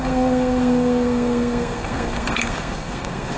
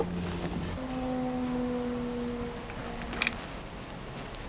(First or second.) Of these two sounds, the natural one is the second